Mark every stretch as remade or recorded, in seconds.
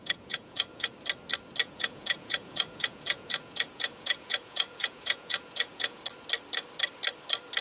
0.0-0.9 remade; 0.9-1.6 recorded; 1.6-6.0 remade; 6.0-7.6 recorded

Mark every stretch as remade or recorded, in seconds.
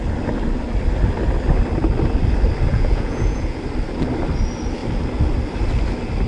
0.0-2.7 recorded; 2.7-3.6 remade; 3.6-6.3 recorded